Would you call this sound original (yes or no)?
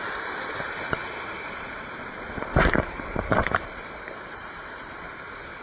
no